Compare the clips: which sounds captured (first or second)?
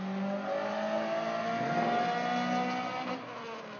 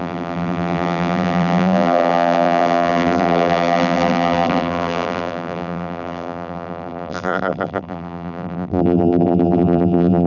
first